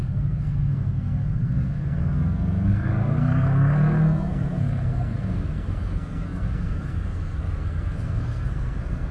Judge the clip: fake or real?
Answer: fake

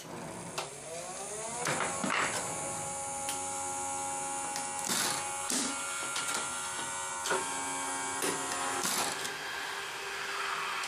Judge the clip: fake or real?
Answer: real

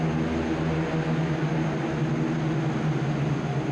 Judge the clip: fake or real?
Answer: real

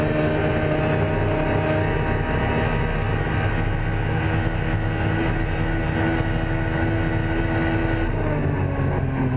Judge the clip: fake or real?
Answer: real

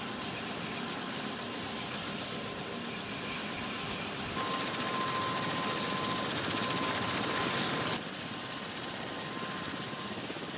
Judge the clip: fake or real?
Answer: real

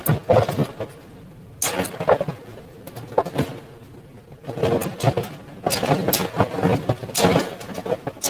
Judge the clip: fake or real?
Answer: real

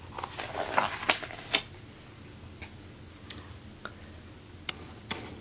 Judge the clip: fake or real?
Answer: real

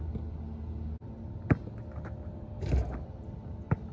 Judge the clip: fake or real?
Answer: real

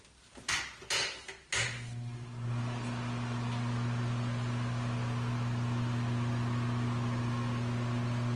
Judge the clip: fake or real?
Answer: real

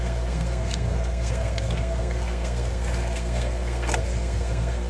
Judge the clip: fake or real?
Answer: fake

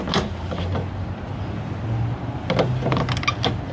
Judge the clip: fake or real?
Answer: real